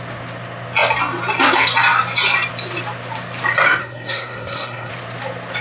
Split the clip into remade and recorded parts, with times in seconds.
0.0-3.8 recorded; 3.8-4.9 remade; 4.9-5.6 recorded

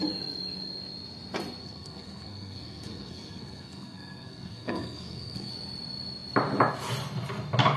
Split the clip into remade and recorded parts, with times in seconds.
0.0-1.6 recorded; 1.6-5.5 remade; 5.5-7.8 recorded

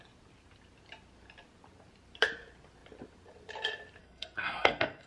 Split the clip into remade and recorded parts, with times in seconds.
0.0-4.0 recorded; 4.0-5.1 remade